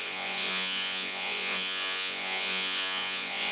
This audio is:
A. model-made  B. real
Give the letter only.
A